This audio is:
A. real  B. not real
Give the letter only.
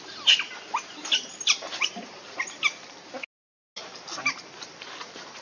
A